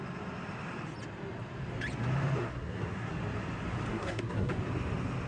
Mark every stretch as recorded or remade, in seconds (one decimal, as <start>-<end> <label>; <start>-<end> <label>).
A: 0.0-2.4 recorded; 2.4-3.1 remade; 3.1-3.9 recorded; 3.9-4.5 remade; 4.5-5.3 recorded